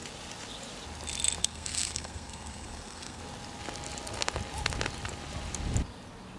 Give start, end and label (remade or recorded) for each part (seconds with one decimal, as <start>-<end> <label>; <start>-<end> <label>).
0.0-1.4 recorded; 1.4-3.2 remade; 3.2-6.4 recorded